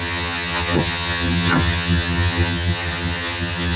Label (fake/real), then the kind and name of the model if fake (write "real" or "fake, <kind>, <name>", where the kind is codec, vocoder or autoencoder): fake, vocoder, HiFi-GAN